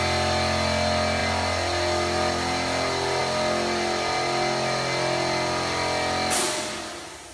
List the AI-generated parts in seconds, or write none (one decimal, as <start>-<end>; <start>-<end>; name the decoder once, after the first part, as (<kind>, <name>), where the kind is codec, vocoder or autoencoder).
none